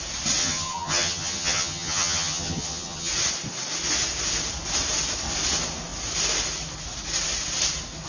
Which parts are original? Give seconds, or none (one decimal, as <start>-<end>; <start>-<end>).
0.0-0.4; 3.1-8.1